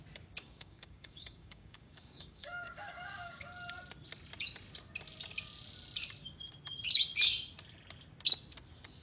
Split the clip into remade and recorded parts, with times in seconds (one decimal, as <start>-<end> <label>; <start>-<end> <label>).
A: 0.0-0.4 recorded; 0.4-3.4 remade; 3.4-9.0 recorded